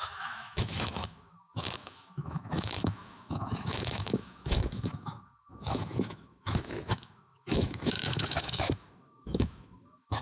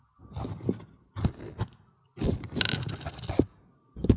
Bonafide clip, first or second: second